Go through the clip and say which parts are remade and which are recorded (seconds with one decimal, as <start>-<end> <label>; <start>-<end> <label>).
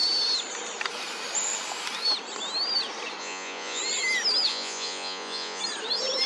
0.0-3.2 recorded; 3.2-3.8 remade; 3.8-4.5 recorded; 4.5-5.6 remade; 5.6-6.3 recorded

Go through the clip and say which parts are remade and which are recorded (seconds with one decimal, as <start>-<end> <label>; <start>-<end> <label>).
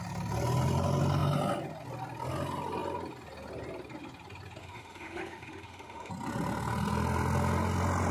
0.0-4.6 recorded; 4.6-6.1 remade; 6.1-8.1 recorded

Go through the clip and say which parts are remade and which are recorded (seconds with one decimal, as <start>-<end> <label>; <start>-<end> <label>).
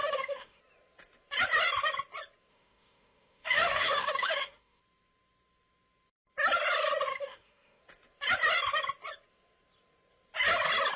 0.0-0.6 remade; 0.6-2.5 recorded; 2.5-4.8 remade; 4.8-7.1 recorded; 7.1-7.8 remade; 7.8-11.0 recorded